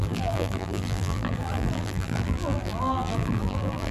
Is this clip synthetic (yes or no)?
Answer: yes